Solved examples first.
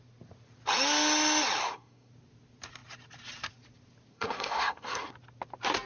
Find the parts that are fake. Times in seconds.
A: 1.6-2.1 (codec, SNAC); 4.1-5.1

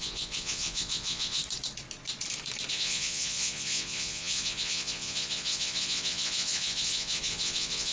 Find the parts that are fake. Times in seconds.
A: 0.0-1.4 (vocoder, Vocos); 2.7-7.9